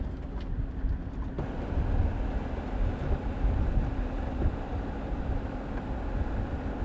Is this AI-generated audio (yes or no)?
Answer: no